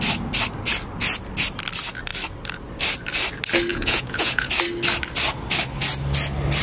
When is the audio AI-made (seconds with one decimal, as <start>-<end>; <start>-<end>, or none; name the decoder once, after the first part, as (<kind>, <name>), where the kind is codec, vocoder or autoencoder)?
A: 3.7-4.5 (vocoder, Vocos)